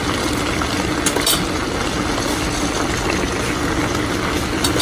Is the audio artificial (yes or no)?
no